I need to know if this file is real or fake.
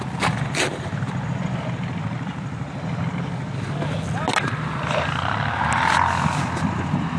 real